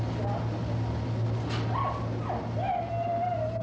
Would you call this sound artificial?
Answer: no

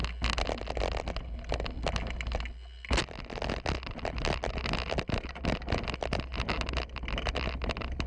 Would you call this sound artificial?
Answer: no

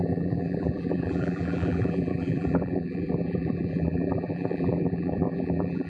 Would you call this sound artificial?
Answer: yes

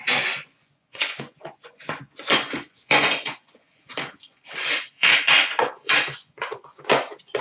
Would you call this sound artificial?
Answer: yes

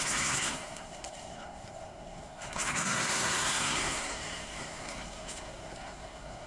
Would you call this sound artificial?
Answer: yes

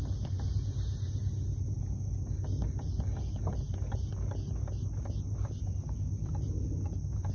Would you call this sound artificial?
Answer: no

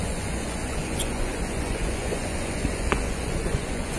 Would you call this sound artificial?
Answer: yes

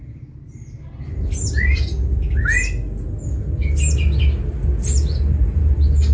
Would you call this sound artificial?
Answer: no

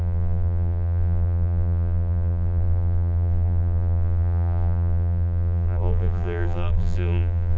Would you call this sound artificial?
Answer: yes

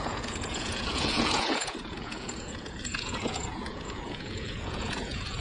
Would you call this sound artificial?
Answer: yes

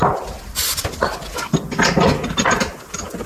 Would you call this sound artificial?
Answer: no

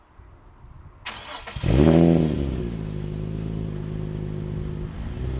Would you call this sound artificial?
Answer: no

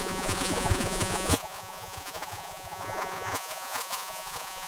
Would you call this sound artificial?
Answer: yes